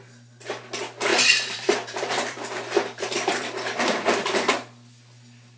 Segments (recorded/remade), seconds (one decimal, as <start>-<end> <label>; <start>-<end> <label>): 0.0-1.1 recorded; 1.1-4.5 remade; 4.5-5.6 recorded

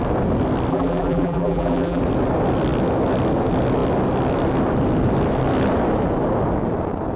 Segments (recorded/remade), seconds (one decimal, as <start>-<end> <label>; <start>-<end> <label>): 0.0-0.7 recorded; 0.7-2.0 remade; 2.0-7.2 recorded

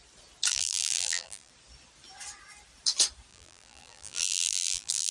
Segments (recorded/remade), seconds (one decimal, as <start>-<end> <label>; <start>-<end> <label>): 0.0-0.5 recorded; 0.5-1.5 remade; 1.5-3.3 recorded; 3.3-5.1 remade

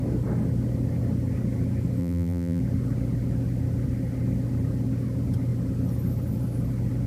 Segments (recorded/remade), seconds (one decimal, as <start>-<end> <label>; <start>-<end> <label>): 0.0-2.0 recorded; 2.0-2.6 remade; 2.6-7.1 recorded

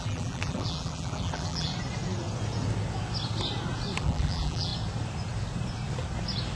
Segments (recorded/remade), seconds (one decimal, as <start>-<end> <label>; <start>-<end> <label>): 0.0-1.7 remade; 1.7-4.0 recorded; 4.0-4.7 remade; 4.7-6.6 recorded

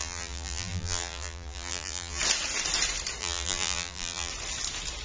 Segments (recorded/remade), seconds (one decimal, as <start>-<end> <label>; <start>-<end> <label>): 0.0-2.2 remade; 2.2-3.2 recorded; 3.2-4.3 remade; 4.3-5.0 recorded

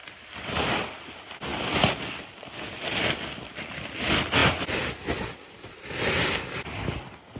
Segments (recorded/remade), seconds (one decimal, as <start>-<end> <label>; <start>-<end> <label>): 0.0-1.1 remade; 1.1-1.5 recorded; 1.5-3.6 remade; 3.6-4.4 recorded; 4.4-5.8 remade; 5.8-7.4 recorded